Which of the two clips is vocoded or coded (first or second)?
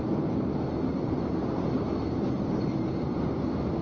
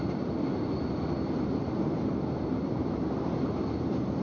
second